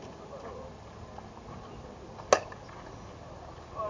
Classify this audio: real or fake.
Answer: real